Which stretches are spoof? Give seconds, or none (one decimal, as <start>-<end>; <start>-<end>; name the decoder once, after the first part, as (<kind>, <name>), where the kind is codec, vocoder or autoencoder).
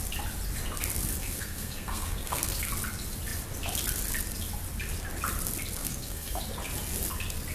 1.2-2.7 (codec, SNAC); 5.8-6.4